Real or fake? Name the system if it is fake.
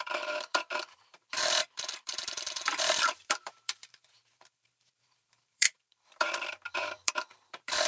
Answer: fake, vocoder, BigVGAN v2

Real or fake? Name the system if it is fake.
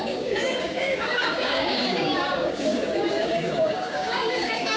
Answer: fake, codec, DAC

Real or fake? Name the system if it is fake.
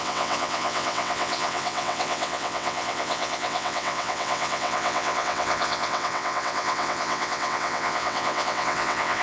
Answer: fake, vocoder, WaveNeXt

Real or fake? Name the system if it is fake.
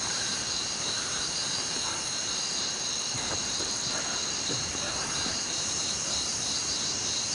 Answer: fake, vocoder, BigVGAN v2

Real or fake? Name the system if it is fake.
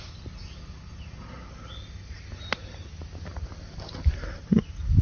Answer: real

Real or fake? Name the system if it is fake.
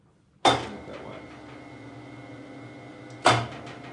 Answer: real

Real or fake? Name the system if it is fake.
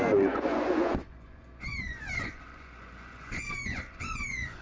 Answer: fake, vocoder, Vocos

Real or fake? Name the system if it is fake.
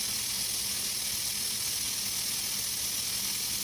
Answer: real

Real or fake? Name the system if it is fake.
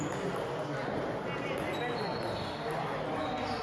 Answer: real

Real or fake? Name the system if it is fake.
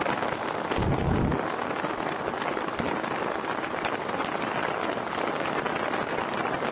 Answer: real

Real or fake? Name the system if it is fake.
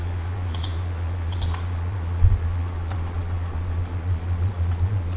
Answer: fake, vocoder, Vocos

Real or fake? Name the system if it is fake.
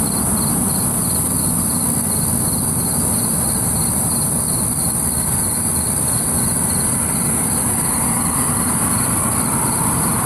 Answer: real